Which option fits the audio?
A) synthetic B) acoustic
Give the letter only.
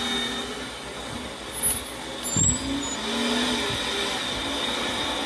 B